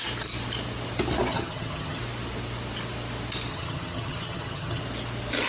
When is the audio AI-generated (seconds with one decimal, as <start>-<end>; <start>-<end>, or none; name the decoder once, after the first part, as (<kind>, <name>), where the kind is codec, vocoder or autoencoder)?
1.3-2.0 (vocoder, HiFi-GAN); 3.5-4.8